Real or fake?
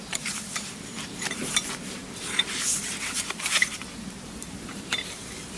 fake